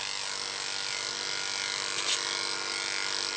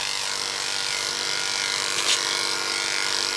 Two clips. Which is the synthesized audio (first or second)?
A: second